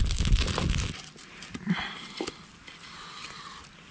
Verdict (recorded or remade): recorded